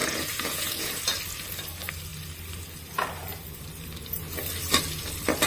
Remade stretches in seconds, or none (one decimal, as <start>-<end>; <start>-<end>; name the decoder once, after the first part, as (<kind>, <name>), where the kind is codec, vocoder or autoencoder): 0.0-1.0 (vocoder, Vocos)

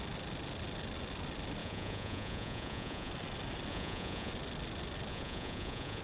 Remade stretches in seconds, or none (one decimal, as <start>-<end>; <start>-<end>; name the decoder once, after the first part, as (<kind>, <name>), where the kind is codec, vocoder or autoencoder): 1.6-3.1 (vocoder, Vocos); 3.7-4.3; 5.1-6.0